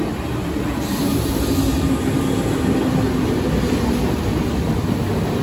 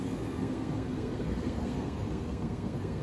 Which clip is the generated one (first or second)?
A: second